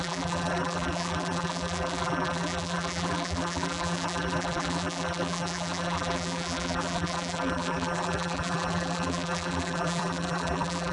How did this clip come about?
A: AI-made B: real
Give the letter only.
A